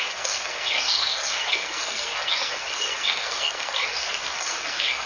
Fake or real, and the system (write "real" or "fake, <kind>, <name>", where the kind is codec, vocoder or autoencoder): fake, codec, SNAC